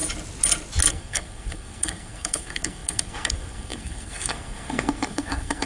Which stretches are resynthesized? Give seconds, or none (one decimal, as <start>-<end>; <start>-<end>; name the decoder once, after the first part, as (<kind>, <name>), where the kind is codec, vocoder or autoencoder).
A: 0.9-5.7 (codec, SNAC)